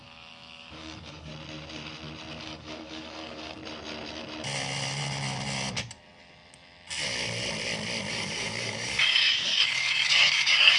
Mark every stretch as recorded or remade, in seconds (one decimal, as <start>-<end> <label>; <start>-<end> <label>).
0.0-1.3 remade; 1.3-2.4 recorded; 2.4-3.6 remade; 3.6-8.1 recorded; 8.1-10.8 remade